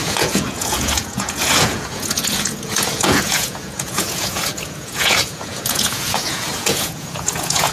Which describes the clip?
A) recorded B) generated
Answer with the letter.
B